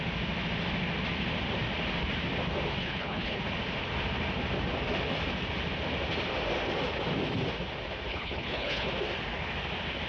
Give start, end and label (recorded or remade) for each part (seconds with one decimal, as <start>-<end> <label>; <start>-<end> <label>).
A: 0.0-2.8 recorded; 2.8-3.4 remade; 3.4-8.1 recorded; 8.1-8.9 remade; 8.9-10.1 recorded